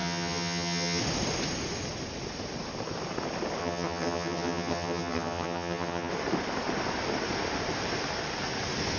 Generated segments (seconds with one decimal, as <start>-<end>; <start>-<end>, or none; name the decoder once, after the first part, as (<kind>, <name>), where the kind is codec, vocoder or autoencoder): 0.0-1.0 (vocoder, HiFi-GAN); 3.6-6.1